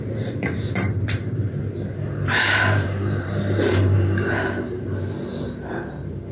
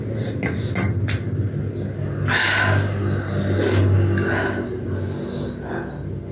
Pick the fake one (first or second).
first